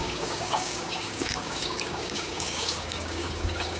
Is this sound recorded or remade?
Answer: remade